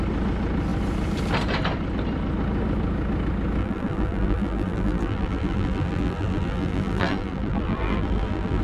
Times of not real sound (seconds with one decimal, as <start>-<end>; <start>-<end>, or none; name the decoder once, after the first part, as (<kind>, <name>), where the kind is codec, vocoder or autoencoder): 3.6-8.6 (vocoder, BigVGAN v2)